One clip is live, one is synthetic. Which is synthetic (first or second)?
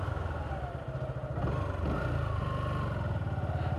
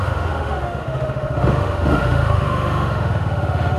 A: second